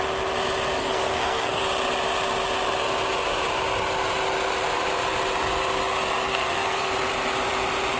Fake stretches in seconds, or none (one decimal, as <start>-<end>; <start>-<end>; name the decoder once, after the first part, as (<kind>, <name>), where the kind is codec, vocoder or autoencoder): 0.8-1.6 (codec, SNAC); 6.3-6.9